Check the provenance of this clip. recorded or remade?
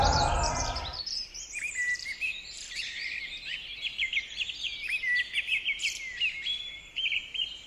remade